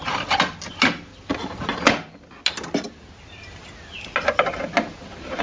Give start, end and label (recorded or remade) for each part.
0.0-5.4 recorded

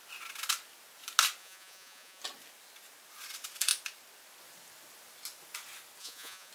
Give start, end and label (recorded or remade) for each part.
0.0-1.4 recorded; 1.4-2.2 remade; 2.2-6.0 recorded; 6.0-6.5 remade